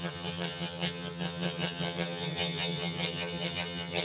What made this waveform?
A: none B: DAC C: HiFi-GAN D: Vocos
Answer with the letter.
C